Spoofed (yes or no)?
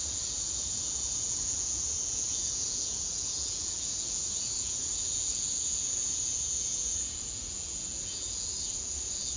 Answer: yes